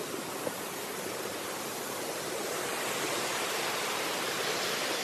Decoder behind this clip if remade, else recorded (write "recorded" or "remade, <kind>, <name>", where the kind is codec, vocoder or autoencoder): recorded